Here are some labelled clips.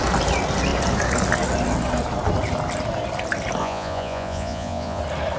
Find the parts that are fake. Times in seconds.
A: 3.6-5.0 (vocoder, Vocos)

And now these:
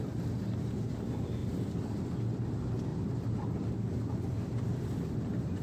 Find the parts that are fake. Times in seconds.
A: 1.4-2.4 (vocoder, BigVGAN v2); 2.9-5.6

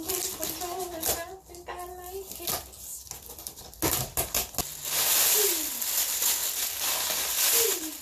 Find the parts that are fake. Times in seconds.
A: none

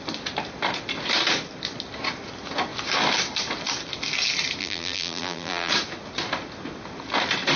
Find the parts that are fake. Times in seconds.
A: 4.6-5.7 (vocoder, BigVGAN v2)

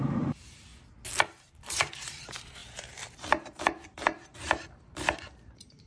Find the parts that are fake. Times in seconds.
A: 0.0-0.7 (vocoder, BigVGAN v2); 1.6-5.9

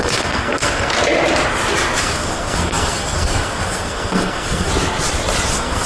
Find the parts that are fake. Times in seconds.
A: 0.0-0.9 (codec, SNAC); 2.0-4.7; 5.5-5.9